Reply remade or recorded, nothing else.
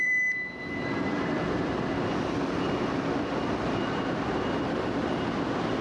remade